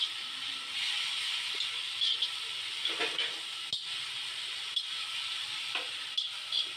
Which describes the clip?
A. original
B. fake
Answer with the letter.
A